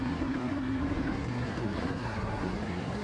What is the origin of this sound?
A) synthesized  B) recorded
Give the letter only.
A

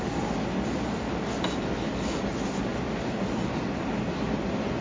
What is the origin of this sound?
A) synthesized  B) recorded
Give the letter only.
B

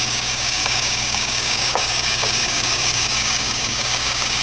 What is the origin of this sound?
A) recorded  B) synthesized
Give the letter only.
B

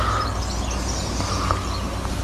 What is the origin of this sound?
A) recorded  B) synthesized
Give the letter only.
A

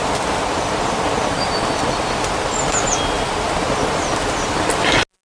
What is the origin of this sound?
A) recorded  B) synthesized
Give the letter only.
A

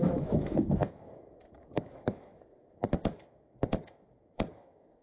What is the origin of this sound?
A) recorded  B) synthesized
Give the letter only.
B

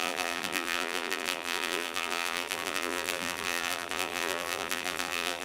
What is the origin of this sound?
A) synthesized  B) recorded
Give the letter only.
A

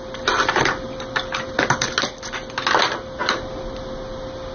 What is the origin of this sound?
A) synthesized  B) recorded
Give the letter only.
B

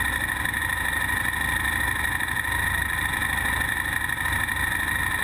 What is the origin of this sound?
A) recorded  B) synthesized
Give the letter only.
A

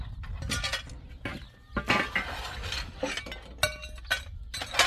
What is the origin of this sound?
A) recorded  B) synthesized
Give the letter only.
A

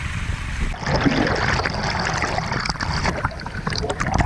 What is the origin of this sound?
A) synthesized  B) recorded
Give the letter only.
B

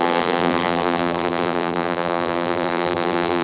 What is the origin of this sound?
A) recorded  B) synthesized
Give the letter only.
B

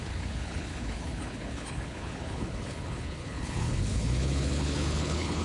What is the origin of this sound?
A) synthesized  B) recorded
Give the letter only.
A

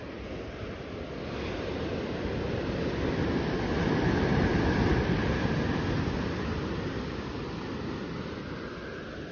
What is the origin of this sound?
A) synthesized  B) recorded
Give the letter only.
B